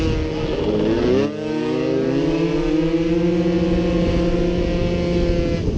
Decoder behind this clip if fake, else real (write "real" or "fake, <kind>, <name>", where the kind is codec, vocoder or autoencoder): real